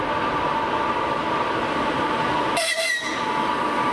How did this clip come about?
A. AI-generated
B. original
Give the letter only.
A